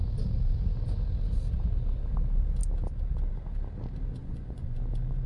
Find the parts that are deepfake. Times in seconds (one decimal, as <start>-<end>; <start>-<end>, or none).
4.2-4.8